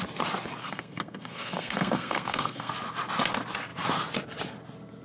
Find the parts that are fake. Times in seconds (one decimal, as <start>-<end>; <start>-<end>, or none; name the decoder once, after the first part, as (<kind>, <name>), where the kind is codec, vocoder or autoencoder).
0.6-2.7 (codec, SNAC)